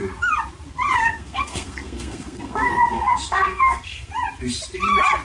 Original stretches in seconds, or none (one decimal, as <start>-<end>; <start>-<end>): 0.0-1.0; 4.1-5.2